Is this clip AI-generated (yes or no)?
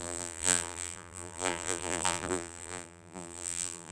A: yes